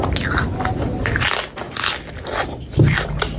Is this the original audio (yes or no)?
yes